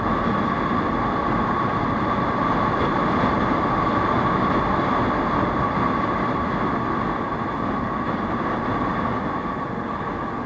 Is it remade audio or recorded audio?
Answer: recorded